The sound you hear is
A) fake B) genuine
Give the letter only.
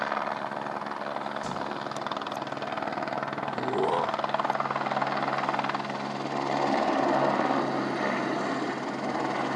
B